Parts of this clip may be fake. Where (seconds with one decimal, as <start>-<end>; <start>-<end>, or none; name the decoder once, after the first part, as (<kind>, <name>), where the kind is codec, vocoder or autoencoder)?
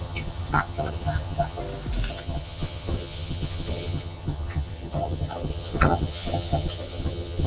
0.0-1.6 (vocoder, HiFi-GAN); 2.1-7.5